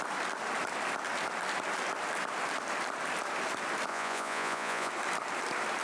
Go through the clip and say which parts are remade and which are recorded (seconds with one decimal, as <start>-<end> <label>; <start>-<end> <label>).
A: 0.0-3.9 recorded; 3.9-4.9 remade; 4.9-5.8 recorded